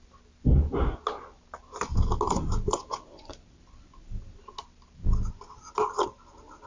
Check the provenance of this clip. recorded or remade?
recorded